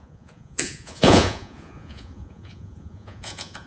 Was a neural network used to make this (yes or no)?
yes